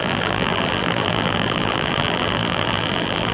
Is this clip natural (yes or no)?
no